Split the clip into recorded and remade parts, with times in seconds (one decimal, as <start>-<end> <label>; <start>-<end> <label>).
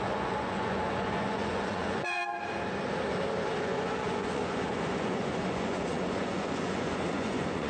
0.0-2.2 remade; 2.2-3.6 recorded; 3.6-7.7 remade